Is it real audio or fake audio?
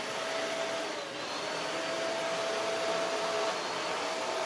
real